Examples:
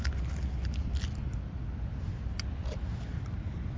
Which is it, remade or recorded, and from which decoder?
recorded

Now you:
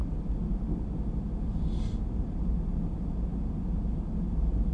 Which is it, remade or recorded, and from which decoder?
recorded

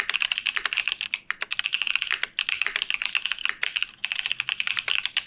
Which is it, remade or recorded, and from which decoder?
recorded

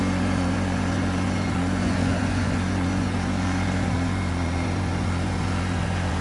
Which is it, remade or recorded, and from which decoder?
remade, vocoder, Vocos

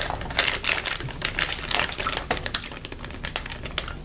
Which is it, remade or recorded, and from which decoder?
recorded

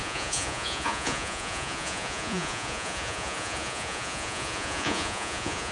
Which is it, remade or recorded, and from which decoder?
remade, vocoder, Vocos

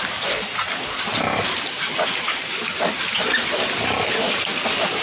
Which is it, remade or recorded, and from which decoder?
recorded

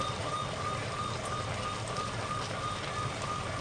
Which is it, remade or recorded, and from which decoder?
recorded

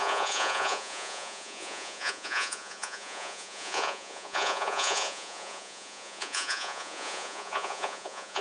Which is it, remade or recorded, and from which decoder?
remade, vocoder, Vocos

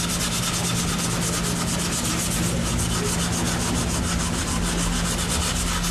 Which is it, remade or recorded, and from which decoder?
recorded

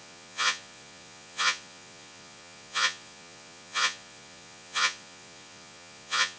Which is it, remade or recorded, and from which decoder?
remade, vocoder, Vocos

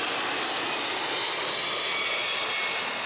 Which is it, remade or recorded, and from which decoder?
recorded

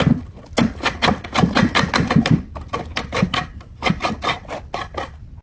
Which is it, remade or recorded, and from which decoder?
recorded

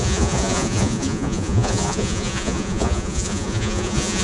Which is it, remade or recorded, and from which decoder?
remade, vocoder, Vocos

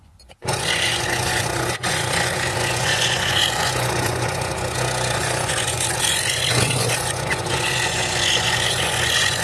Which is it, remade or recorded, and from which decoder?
remade, vocoder, Vocos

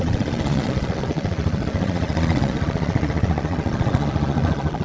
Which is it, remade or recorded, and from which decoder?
remade, vocoder, Vocos